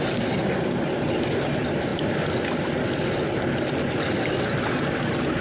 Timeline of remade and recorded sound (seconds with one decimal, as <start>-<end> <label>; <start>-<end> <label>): 0.0-5.4 recorded